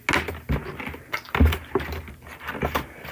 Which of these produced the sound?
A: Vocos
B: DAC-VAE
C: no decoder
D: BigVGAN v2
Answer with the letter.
C